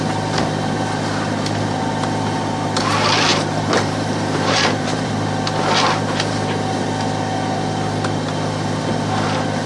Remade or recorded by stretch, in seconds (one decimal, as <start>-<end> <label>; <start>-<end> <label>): 0.0-3.3 recorded; 3.3-5.1 remade; 5.1-9.7 recorded